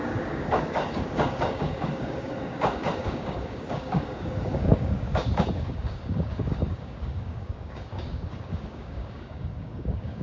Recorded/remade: remade